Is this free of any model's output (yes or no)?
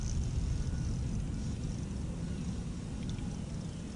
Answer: yes